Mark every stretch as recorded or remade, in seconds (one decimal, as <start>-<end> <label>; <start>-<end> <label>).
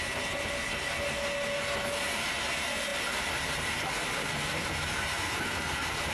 0.0-2.9 recorded; 2.9-6.1 remade